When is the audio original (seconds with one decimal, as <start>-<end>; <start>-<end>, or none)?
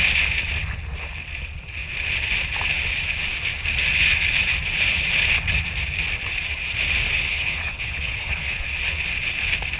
0.0-7.3; 8.6-9.8